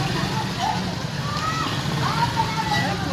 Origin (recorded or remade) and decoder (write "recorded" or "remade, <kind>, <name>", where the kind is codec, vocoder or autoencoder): recorded